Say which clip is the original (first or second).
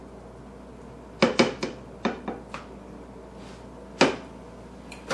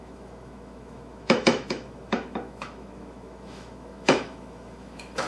first